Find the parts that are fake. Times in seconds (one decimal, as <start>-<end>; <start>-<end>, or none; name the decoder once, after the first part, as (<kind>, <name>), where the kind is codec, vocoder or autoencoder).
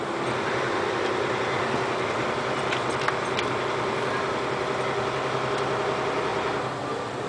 none